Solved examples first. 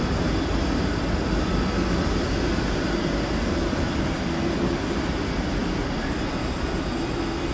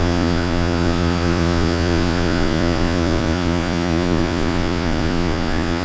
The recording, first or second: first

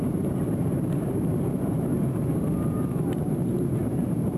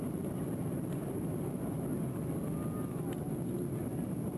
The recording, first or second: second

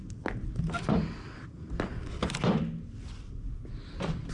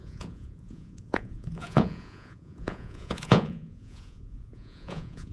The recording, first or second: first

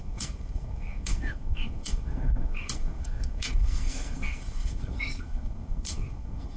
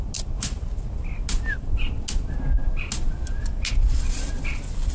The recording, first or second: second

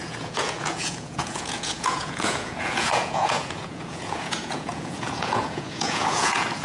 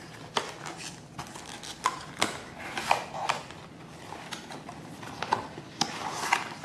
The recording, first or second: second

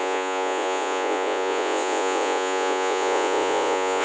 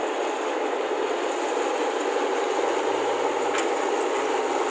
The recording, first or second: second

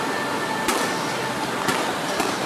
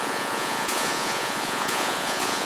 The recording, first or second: first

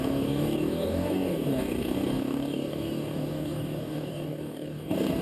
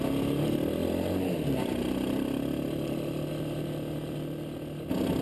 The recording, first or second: second